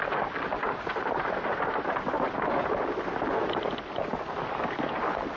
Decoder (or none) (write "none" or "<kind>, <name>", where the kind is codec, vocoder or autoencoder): none